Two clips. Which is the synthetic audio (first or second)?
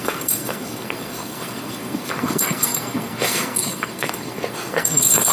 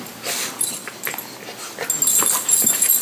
first